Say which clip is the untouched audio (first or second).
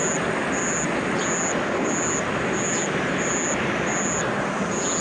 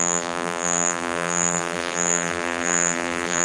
first